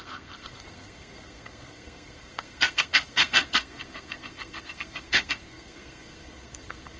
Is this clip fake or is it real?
fake